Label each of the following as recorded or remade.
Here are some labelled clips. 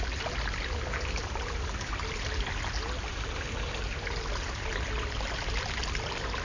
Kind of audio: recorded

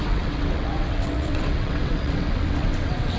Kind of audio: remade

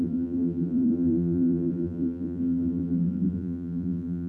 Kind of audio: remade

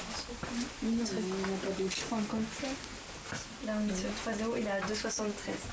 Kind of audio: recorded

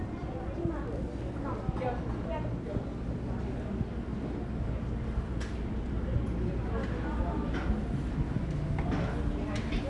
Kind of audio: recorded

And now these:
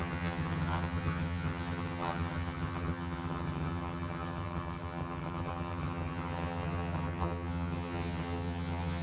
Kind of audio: remade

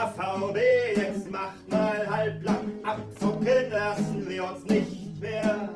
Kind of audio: remade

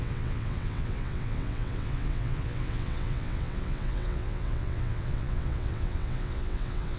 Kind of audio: remade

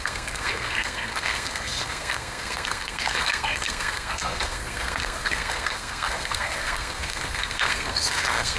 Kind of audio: remade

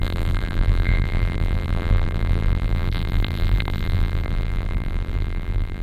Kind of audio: remade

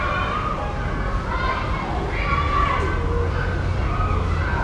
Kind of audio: recorded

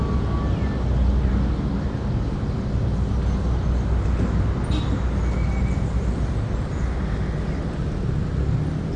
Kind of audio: recorded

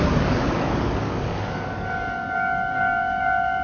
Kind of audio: remade